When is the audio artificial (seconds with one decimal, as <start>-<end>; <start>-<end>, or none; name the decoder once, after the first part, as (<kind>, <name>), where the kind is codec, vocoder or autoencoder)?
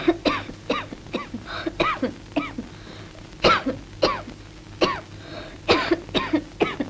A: 1.2-2.1 (vocoder, BigVGAN v2)